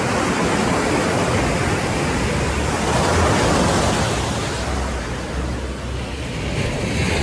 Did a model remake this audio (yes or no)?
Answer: no